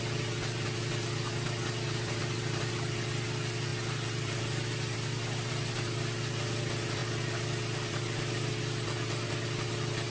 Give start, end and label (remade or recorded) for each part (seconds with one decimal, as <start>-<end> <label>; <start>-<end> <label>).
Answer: 0.0-10.1 recorded